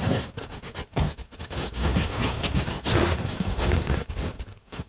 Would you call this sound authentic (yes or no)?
no